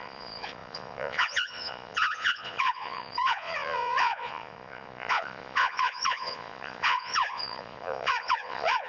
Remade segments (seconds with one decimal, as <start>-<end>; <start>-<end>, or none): 0.0-8.9